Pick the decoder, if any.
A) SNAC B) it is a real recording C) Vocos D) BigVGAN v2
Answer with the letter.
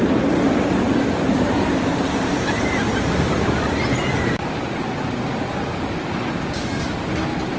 B